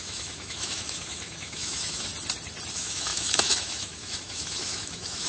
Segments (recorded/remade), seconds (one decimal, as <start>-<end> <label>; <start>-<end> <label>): 0.0-2.1 remade; 2.1-2.7 recorded; 2.7-5.3 remade